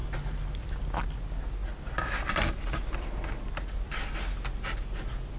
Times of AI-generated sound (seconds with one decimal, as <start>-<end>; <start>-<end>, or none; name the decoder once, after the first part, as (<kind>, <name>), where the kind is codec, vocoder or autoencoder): none